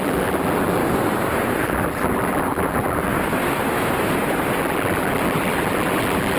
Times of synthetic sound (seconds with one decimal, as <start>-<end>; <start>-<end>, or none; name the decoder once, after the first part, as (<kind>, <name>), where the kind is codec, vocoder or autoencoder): 0.0-0.8 (vocoder, BigVGAN v2); 1.6-3.1; 4.6-6.4